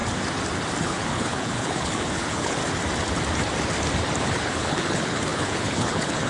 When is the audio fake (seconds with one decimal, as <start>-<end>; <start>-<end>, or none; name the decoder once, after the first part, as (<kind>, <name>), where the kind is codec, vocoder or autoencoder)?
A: 0.8-2.6 (codec, HILCodec); 4.2-6.3